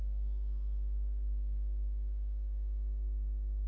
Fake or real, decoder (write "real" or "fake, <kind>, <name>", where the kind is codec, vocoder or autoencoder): fake, codec, DAC